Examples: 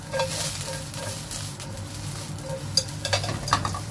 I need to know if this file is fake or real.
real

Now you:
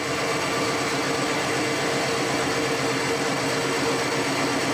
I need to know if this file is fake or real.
real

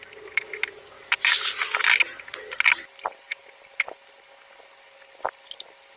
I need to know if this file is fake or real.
real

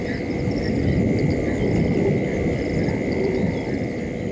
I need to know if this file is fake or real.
fake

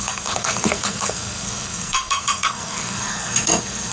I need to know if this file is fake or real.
fake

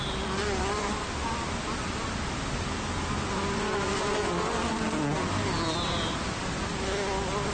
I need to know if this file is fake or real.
real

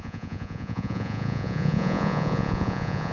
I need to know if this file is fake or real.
fake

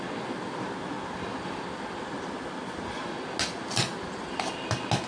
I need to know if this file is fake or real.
real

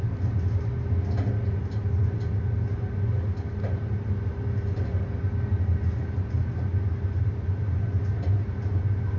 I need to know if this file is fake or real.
real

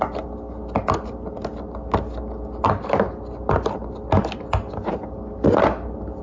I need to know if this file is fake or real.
real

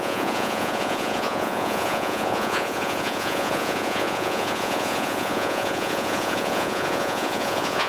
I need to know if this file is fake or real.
fake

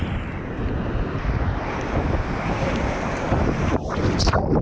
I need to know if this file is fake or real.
real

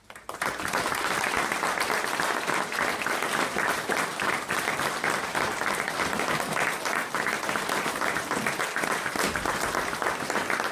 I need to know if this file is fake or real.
fake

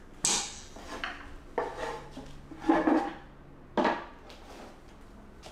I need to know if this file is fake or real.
real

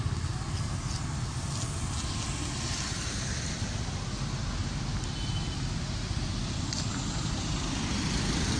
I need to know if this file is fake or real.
real